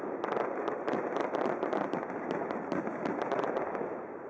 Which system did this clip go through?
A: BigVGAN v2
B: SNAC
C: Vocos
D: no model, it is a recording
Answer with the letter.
D